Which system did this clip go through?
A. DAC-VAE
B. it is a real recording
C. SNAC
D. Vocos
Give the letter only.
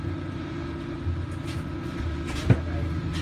B